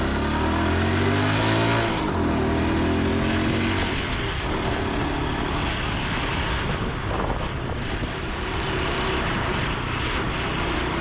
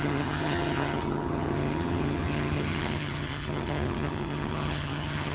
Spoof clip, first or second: second